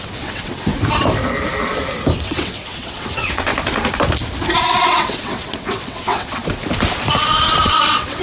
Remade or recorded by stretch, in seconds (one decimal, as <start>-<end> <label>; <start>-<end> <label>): 0.0-0.7 remade; 0.7-2.2 recorded; 2.2-3.5 remade; 3.5-4.7 recorded; 4.7-6.4 remade; 6.4-7.6 recorded; 7.6-8.2 remade